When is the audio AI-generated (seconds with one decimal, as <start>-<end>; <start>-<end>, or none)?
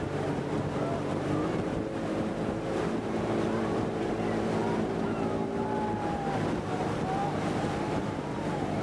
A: 0.0-8.8